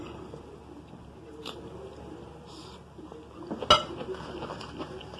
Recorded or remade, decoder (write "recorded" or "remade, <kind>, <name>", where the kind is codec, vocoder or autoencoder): recorded